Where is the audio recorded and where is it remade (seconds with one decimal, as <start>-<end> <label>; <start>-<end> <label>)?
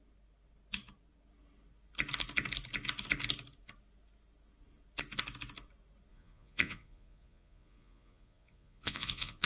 0.0-6.1 recorded; 6.1-9.5 remade